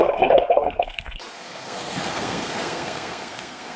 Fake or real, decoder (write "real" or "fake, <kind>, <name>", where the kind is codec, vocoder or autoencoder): fake, codec, SNAC